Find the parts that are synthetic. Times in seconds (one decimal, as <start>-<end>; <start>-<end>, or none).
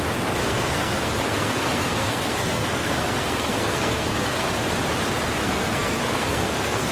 0.4-4.5; 5.4-6.9